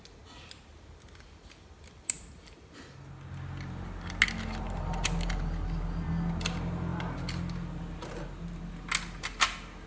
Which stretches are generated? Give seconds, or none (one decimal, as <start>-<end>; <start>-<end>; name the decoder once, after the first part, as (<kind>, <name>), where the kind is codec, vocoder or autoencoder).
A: none